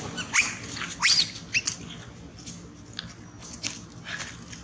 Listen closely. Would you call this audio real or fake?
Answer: real